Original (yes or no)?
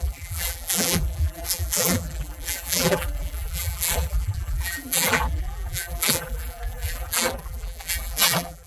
no